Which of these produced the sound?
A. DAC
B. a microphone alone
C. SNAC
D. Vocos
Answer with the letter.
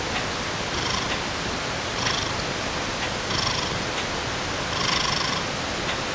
B